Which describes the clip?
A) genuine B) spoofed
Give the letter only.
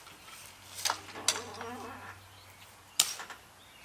A